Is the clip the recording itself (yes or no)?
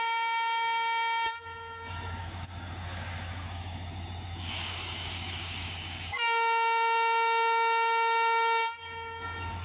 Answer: no